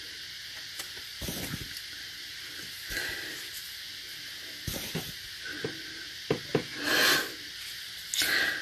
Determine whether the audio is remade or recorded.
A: recorded